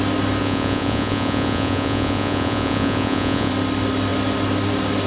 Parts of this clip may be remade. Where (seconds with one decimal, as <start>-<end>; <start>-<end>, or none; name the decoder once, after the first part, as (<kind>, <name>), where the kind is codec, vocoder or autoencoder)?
0.4-3.5 (vocoder, Vocos)